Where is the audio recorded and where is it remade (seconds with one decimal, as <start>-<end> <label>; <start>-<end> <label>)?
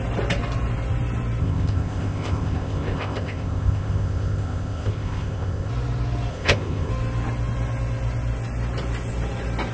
0.0-1.4 recorded; 1.4-5.7 remade; 5.7-6.3 recorded; 6.3-6.9 remade; 6.9-9.7 recorded